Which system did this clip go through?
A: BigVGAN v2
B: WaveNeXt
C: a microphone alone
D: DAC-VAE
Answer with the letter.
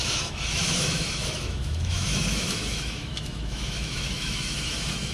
D